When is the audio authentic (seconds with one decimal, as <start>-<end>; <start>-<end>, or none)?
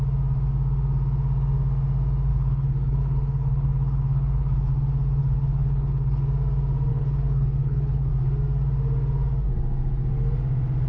0.0-2.3; 4.7-5.2; 6.2-6.9; 8.1-10.9